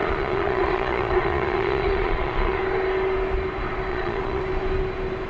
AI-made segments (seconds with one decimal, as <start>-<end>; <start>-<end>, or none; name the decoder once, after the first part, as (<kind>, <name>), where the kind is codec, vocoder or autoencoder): 0.0-2.6 (vocoder, Vocos); 3.9-4.4